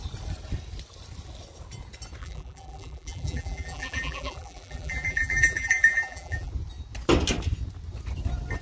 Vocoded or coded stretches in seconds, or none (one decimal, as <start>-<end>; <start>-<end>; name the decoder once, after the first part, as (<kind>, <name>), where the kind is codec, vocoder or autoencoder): 2.2-6.5 (vocoder, BigVGAN v2)